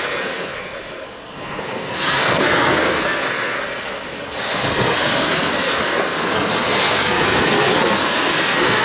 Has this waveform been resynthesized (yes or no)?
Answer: yes